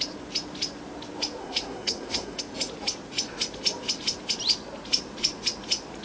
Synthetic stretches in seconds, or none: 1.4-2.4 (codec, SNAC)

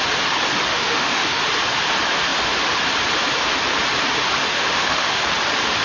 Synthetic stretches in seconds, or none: 0.7-1.4 (autoencoder, DAC-VAE); 4.5-5.2

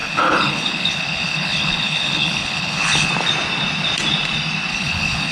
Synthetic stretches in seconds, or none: 0.0-3.1 (codec, HILCodec); 4.7-5.3

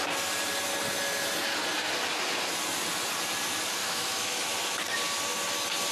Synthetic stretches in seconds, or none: 3.8-4.5 (autoencoder, DAC-VAE)